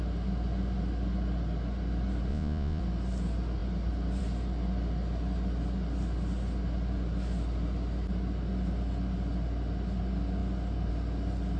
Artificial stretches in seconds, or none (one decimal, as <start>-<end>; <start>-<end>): 2.3-2.8